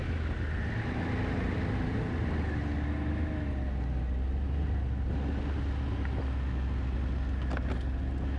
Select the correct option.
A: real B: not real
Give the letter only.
A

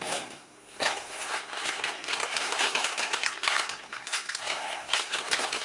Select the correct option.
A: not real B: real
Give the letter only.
A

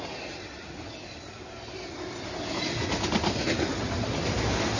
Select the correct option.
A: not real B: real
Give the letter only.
B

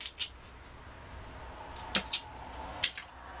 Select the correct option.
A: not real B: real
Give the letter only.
B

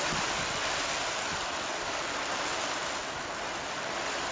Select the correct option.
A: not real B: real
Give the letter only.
B